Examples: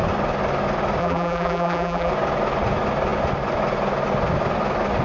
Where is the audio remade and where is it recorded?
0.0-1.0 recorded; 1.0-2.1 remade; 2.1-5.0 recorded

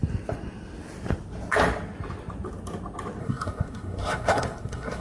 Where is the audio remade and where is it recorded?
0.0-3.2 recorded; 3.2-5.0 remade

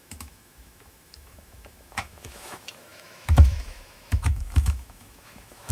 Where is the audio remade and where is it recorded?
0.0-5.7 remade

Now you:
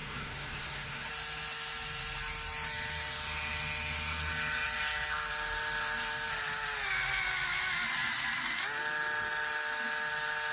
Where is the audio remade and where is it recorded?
0.0-1.1 remade; 1.1-10.5 recorded

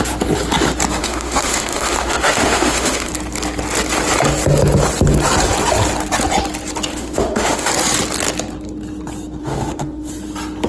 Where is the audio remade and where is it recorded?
0.0-1.0 recorded; 1.0-3.1 remade; 3.1-6.9 recorded; 6.9-7.7 remade; 7.7-9.4 recorded; 9.4-10.1 remade; 10.1-10.7 recorded

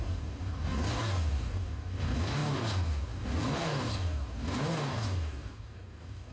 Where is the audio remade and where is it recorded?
0.0-6.3 remade

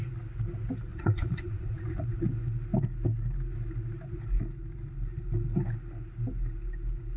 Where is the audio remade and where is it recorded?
0.0-0.9 recorded; 0.9-2.2 remade; 2.2-7.2 recorded